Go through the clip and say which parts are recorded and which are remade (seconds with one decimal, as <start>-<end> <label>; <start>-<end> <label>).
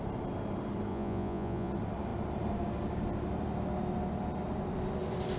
0.0-0.9 recorded; 0.9-1.7 remade; 1.7-5.4 recorded